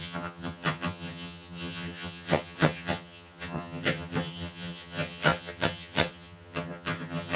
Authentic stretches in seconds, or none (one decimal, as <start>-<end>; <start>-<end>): none

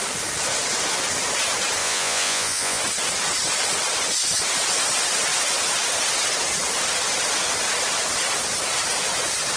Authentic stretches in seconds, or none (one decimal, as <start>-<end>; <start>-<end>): 0.0-1.8; 2.8-9.6